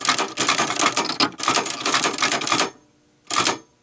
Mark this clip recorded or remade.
recorded